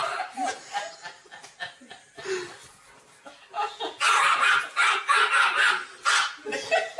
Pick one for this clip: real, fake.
real